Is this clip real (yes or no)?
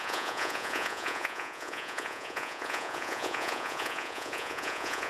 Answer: no